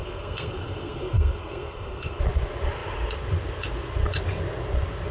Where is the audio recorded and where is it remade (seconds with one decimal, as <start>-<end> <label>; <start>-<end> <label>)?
0.0-2.2 remade; 2.2-5.1 recorded

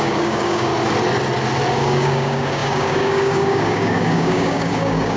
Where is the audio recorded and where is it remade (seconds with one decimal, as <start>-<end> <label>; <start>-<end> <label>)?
0.0-0.7 remade; 0.7-1.7 recorded; 1.7-5.2 remade